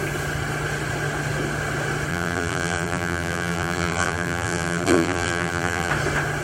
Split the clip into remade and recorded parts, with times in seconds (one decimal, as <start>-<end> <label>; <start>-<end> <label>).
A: 0.0-2.1 recorded; 2.1-5.9 remade; 5.9-6.4 recorded